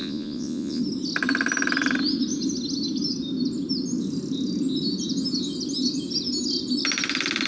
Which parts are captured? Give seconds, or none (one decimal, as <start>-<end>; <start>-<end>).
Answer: 0.8-7.5

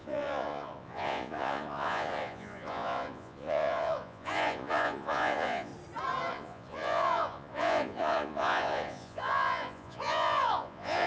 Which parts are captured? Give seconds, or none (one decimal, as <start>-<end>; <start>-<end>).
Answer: 5.7-6.3

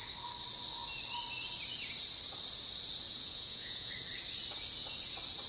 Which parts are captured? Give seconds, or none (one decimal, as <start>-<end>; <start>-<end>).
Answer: 0.0-3.2; 3.9-5.5

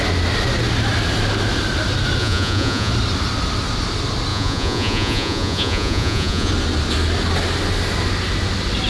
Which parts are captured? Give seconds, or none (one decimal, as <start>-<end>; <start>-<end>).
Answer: 0.0-2.2; 2.9-4.3; 6.5-8.9

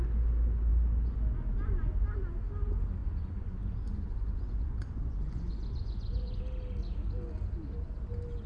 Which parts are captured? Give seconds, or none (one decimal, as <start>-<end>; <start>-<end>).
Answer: 0.0-3.0; 6.4-8.5

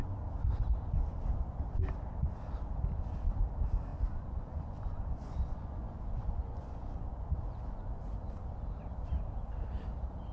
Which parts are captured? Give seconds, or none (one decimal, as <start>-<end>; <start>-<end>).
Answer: 0.0-3.9; 8.0-10.3

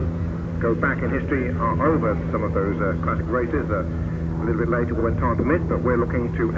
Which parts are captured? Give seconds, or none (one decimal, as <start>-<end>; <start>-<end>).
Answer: 0.0-6.6

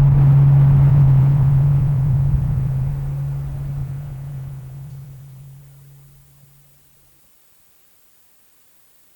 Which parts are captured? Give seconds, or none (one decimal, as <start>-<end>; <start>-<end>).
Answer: 0.0-0.9; 2.9-3.8; 5.6-9.2